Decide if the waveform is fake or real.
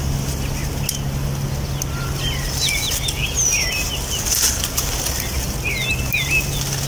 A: real